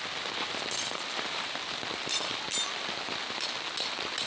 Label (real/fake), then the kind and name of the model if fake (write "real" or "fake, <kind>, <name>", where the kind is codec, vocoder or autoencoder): fake, vocoder, BigVGAN v2